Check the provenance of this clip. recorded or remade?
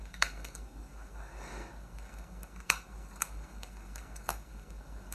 remade